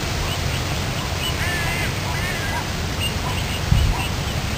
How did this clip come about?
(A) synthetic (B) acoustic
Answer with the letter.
B